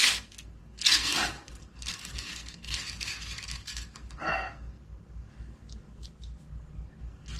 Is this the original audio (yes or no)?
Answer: no